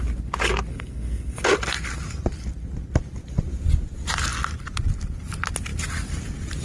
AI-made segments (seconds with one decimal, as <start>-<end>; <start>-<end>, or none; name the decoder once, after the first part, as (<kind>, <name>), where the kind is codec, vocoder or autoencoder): 0.7-1.4 (codec, SNAC)